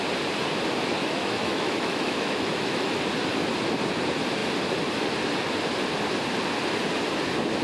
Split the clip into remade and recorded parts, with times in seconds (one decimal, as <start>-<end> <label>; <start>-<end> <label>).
0.0-1.0 recorded; 1.0-3.0 remade; 3.0-7.6 recorded